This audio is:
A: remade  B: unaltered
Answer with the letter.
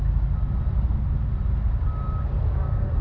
B